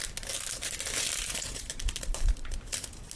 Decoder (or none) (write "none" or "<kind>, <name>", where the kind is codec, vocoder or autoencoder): none